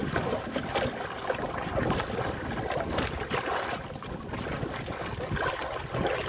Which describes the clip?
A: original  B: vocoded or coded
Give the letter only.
A